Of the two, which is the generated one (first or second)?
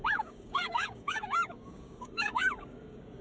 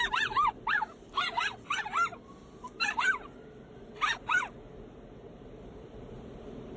first